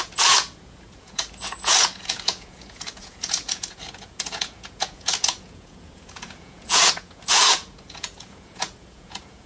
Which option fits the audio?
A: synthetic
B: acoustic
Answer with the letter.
A